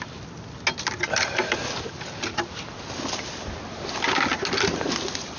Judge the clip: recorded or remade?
recorded